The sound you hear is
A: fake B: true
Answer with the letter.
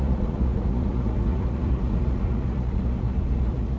A